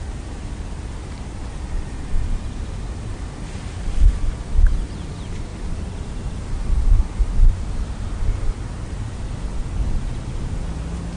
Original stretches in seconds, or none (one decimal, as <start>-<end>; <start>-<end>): 0.0-11.2